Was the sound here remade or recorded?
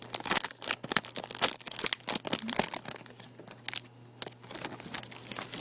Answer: recorded